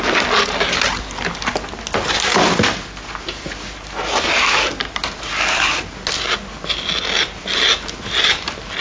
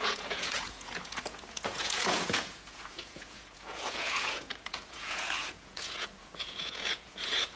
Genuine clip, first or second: first